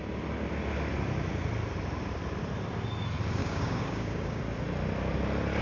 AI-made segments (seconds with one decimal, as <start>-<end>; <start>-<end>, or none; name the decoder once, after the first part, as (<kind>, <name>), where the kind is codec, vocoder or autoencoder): 3.4-4.4 (codec, DAC)